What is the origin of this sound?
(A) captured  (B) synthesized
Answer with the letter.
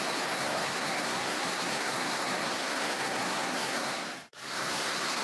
B